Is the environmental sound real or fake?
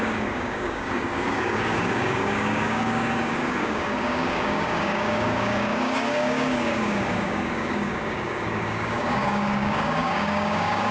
fake